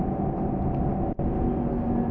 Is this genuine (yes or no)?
yes